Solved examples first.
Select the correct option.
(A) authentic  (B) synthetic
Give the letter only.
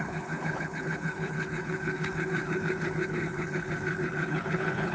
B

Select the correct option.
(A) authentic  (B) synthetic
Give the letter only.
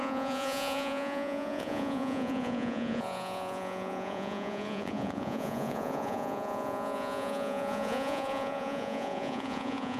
B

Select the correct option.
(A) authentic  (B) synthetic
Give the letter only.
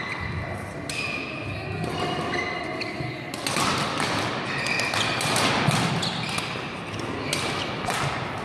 A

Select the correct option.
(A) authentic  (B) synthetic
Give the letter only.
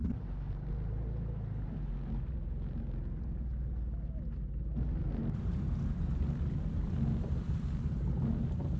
A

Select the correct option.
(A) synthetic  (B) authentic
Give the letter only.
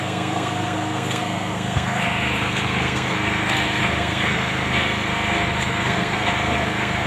A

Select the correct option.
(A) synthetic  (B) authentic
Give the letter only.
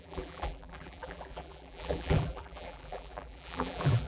A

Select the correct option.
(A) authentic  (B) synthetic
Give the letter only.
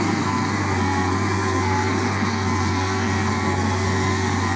B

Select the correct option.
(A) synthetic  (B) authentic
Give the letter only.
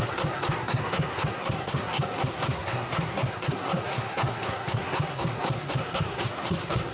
A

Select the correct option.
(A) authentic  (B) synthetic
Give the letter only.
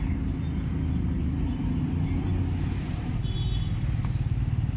A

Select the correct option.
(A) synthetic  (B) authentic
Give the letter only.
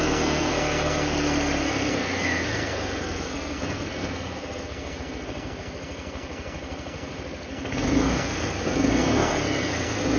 A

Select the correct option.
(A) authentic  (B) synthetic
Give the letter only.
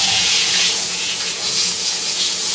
B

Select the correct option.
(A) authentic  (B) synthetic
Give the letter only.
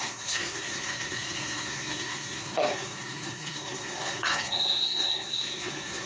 B